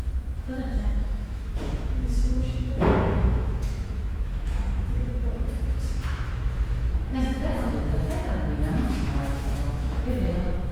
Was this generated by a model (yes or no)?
yes